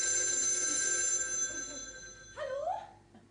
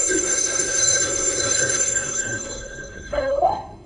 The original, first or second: first